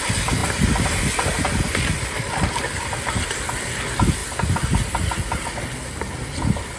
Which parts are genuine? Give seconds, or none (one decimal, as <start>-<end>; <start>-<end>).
0.0-6.8